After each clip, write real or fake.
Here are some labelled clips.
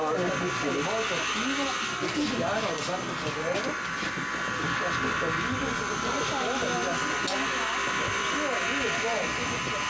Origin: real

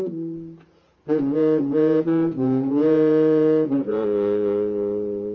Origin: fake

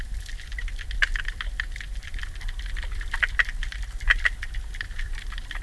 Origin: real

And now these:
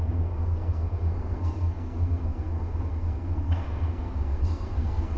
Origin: fake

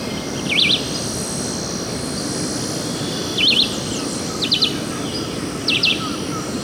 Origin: real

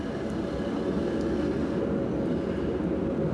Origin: real